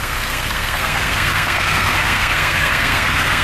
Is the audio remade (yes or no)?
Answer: yes